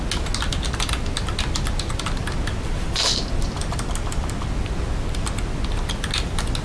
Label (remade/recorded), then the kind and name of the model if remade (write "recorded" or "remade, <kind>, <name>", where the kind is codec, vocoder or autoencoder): recorded